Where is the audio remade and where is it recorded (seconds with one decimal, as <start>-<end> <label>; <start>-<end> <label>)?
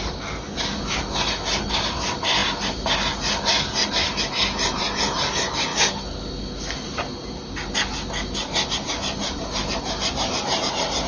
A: 0.0-11.1 recorded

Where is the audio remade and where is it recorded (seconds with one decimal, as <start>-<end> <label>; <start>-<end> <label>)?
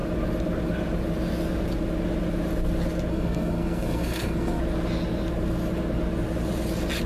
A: 0.0-3.1 recorded; 3.1-4.6 remade; 4.6-7.1 recorded